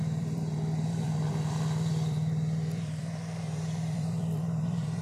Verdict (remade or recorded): remade